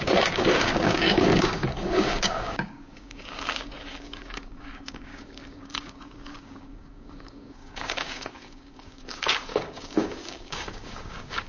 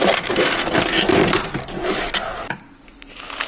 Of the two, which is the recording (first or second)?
second